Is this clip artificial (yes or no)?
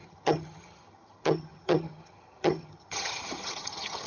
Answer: yes